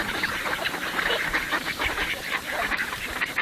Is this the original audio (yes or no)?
no